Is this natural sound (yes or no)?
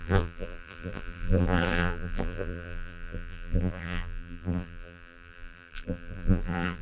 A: no